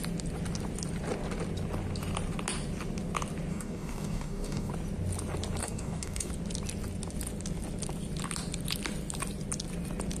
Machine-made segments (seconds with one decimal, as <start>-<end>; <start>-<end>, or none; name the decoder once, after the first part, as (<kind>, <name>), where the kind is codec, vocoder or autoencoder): 3.5-4.7 (codec, DAC); 5.6-6.3